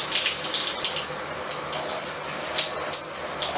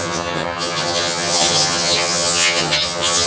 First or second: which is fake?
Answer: second